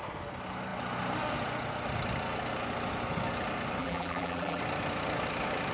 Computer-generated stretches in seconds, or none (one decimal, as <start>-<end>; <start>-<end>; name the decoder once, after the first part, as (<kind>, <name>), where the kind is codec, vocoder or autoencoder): 3.8-4.6 (vocoder, BigVGAN v2)